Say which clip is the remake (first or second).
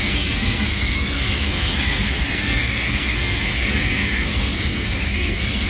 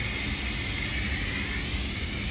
first